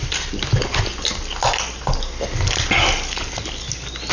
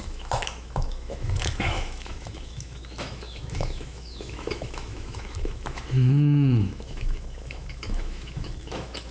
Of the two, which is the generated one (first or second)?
second